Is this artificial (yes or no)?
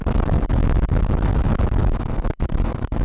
yes